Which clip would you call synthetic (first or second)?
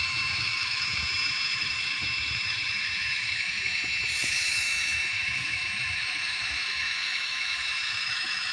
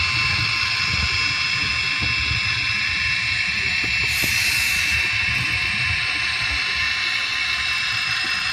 first